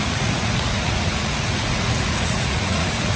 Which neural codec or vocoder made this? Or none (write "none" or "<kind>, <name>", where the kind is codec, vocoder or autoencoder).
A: vocoder, Vocos